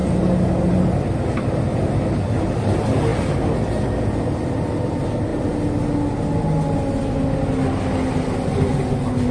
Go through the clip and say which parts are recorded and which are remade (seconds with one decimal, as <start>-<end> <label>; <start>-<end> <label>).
0.0-9.3 recorded